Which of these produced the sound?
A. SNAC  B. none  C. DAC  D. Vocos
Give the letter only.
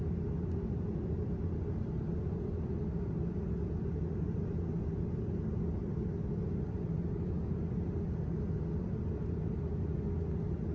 B